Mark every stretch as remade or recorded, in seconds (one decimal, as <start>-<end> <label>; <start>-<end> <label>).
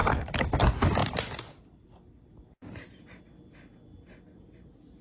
0.0-0.6 remade; 0.6-5.0 recorded